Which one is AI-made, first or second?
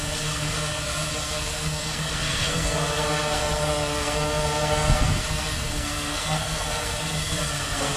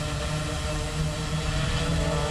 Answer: first